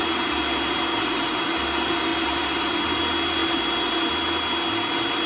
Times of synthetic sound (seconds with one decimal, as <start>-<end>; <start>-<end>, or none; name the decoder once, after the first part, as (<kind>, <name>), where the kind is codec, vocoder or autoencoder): 2.1-3.0 (vocoder, BigVGAN v2); 3.4-4.1